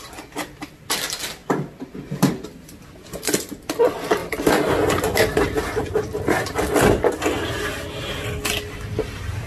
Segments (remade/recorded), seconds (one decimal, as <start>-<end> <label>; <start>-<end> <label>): 0.0-4.2 recorded; 4.2-4.7 remade; 4.7-5.3 recorded; 5.3-6.7 remade; 6.7-9.5 recorded